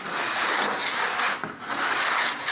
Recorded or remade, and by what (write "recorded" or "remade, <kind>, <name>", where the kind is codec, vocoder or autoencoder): recorded